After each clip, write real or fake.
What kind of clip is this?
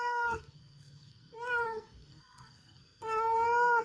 fake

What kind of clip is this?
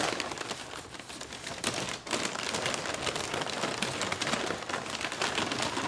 real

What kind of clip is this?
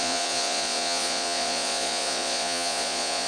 fake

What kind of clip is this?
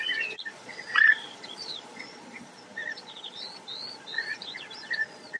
fake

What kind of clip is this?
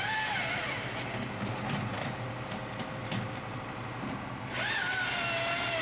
real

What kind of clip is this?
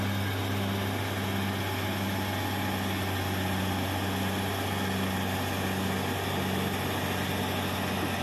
real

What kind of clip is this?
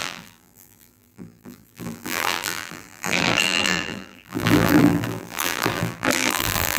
fake